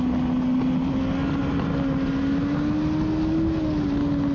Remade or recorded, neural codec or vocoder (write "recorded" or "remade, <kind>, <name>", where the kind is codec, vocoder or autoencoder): recorded